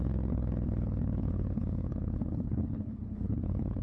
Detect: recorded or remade remade